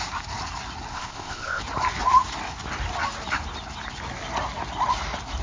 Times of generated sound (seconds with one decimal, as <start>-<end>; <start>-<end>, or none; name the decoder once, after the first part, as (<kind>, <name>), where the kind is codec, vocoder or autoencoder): 0.9-1.6 (codec, ZipCodec)